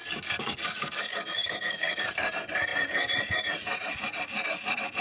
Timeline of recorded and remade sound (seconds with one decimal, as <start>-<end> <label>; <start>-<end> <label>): 0.0-2.3 remade; 2.3-5.0 recorded